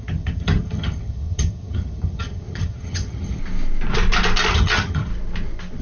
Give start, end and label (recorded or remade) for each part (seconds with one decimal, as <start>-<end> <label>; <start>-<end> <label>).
0.0-3.4 remade; 3.4-4.5 recorded; 4.5-5.1 remade; 5.1-5.8 recorded